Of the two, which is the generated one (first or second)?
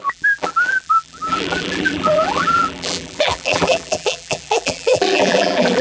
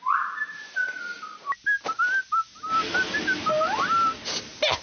first